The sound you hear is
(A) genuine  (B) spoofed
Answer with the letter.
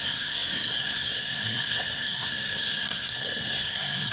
B